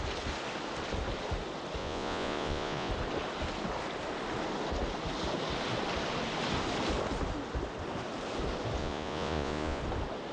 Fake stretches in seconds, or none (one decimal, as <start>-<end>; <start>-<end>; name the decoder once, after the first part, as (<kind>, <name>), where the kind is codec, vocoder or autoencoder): 1.8-2.9 (vocoder, Vocos); 8.8-9.8